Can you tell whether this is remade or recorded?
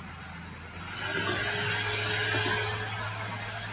recorded